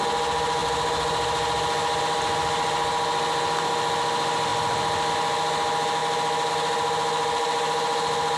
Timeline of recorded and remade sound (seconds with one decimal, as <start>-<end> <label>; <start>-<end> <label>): 0.0-8.4 recorded